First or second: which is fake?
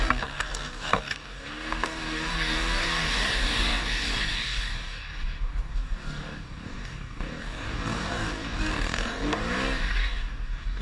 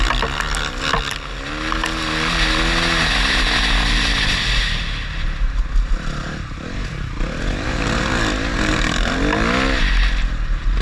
first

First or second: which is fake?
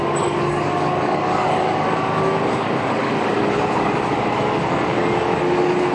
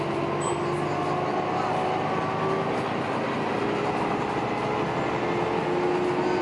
first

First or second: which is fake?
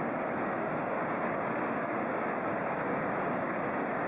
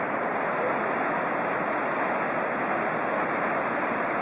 first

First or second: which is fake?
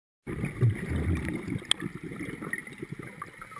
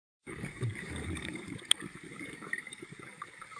second